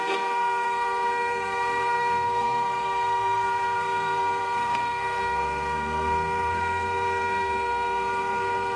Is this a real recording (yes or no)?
no